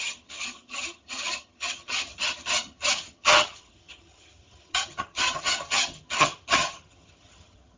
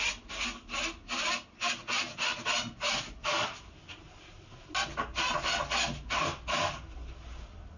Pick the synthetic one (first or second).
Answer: first